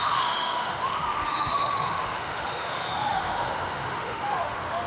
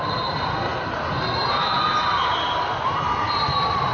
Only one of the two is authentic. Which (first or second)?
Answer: second